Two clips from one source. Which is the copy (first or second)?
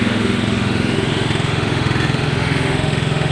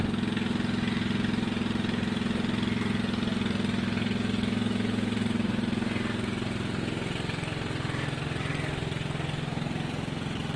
first